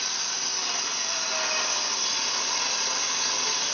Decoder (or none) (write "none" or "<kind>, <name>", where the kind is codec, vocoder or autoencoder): none